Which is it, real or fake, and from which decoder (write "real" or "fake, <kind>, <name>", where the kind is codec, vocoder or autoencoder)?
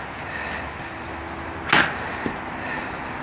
real